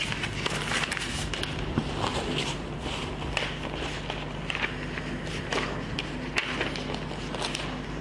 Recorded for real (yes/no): yes